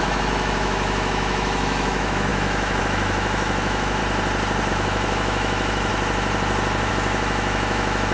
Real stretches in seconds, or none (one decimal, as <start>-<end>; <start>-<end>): 4.0-4.7; 5.9-6.9